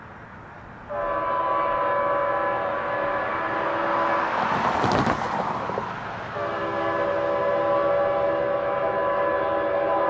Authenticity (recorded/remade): recorded